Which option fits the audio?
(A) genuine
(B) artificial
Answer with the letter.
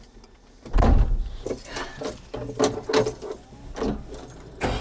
A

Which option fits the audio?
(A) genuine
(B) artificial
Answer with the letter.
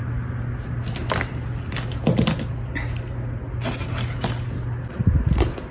A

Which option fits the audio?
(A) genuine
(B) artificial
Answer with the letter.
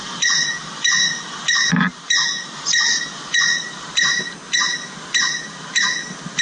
A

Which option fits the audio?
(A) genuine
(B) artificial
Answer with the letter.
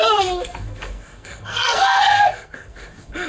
B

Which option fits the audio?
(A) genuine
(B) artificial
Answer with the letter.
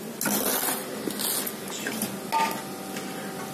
A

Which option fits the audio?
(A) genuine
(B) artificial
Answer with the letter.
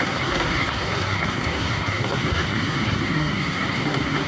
B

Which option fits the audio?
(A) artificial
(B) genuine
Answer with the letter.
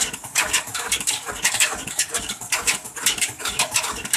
A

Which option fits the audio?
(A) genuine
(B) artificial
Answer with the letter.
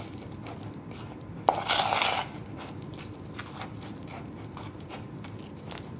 A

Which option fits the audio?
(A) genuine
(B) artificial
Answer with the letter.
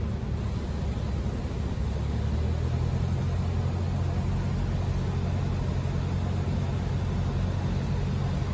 A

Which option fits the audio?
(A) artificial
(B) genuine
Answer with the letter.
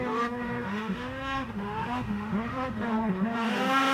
A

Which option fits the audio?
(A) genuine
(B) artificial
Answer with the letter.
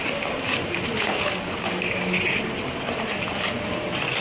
A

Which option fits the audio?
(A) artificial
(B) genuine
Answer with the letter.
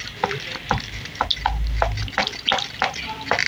B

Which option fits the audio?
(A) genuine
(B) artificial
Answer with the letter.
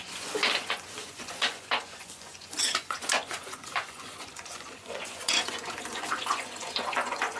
B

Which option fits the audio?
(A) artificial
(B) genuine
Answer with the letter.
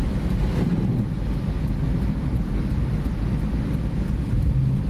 B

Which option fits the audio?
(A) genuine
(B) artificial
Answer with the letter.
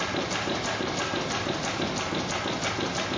A